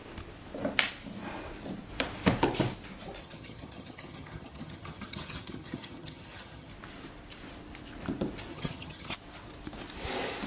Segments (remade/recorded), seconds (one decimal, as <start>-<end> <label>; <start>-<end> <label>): 0.0-3.2 recorded; 3.2-6.7 remade; 6.7-8.5 recorded; 8.5-9.1 remade; 9.1-10.5 recorded